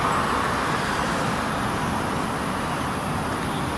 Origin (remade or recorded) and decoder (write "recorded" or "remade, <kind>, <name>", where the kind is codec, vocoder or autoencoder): recorded